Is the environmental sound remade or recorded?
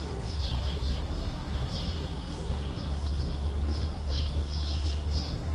remade